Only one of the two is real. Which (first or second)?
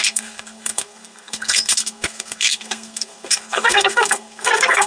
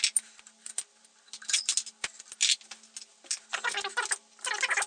second